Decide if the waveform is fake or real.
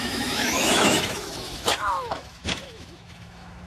fake